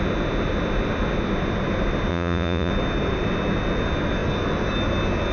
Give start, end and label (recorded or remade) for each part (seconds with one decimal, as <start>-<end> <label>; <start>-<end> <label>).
0.0-2.1 recorded; 2.1-2.7 remade; 2.7-5.3 recorded